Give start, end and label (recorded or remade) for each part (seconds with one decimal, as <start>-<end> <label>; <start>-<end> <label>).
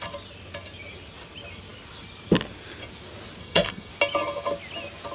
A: 0.0-3.4 recorded; 3.4-3.9 remade; 3.9-5.1 recorded